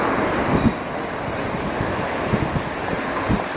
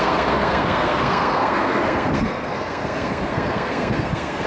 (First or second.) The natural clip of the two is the first